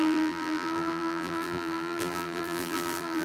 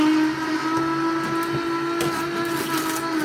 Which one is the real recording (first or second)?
second